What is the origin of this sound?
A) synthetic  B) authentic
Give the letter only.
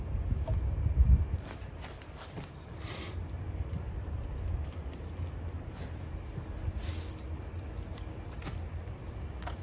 B